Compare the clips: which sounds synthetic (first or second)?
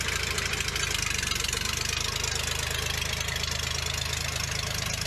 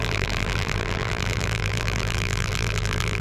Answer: second